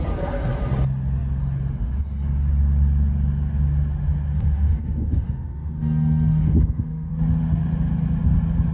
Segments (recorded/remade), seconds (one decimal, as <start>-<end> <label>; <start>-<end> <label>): 0.0-4.3 recorded; 4.3-7.1 remade; 7.1-8.7 recorded